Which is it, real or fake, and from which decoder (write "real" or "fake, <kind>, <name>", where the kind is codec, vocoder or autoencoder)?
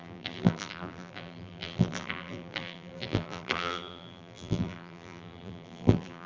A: fake, vocoder, BigVGAN v2